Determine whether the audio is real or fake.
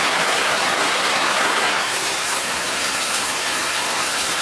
fake